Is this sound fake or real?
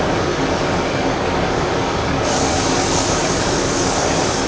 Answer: fake